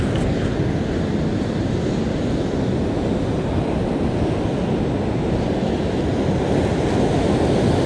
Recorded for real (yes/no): yes